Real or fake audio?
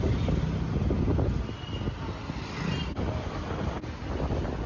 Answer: real